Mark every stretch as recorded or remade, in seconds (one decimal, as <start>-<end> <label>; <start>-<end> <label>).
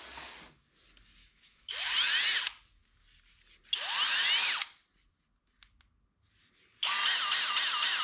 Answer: 0.0-1.2 recorded; 1.2-1.7 remade; 1.7-8.0 recorded